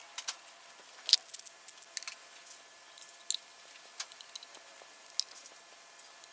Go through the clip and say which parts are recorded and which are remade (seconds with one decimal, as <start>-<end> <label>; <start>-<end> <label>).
0.0-6.3 recorded